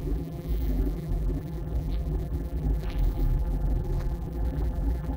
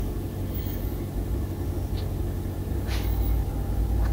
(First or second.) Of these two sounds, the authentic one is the second